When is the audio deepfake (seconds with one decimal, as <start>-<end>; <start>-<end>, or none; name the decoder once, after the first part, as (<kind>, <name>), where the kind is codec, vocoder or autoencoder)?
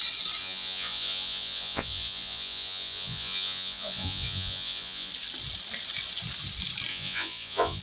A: 0.4-5.1 (vocoder, Vocos); 6.9-7.8